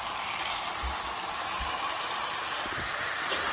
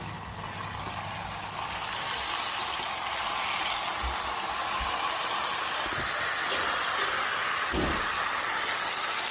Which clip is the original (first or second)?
second